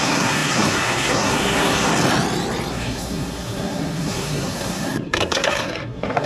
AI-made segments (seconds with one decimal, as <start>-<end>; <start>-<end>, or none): 0.0-1.9; 2.7-6.3

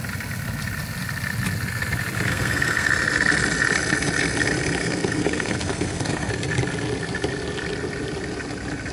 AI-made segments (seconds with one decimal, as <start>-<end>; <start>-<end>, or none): 2.3-2.9; 4.8-6.3